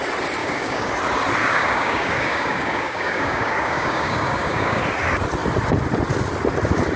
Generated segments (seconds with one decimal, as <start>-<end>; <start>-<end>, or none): 0.4-0.9; 1.4-4.8